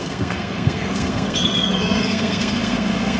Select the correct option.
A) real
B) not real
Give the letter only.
B